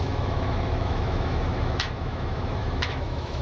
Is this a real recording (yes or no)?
no